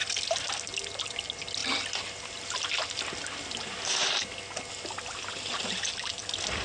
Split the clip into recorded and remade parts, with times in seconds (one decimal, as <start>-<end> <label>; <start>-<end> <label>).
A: 0.0-6.6 recorded